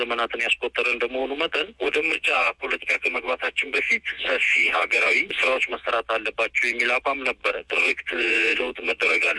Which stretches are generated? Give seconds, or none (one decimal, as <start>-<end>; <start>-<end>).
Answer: 1.2-5.9; 7.4-9.4

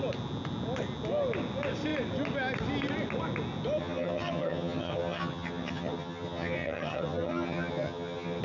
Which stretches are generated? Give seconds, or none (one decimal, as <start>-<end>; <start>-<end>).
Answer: 3.8-8.4

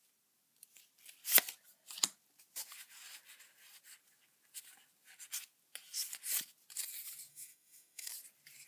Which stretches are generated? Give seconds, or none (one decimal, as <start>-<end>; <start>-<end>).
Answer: 7.3-8.1

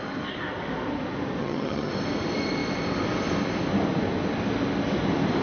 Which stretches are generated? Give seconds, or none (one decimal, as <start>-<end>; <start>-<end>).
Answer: 1.4-1.9

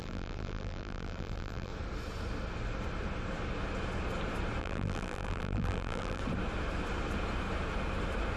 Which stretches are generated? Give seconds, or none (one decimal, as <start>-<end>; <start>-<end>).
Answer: 0.0-1.7; 4.6-6.2

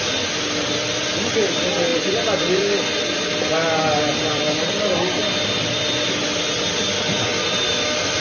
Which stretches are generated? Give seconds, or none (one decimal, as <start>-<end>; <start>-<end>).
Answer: 7.3-8.2

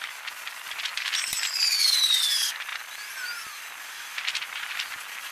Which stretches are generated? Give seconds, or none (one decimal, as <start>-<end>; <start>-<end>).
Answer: none

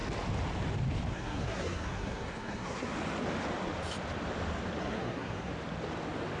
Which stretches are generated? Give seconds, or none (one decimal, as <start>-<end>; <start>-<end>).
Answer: 1.1-2.9; 4.8-5.5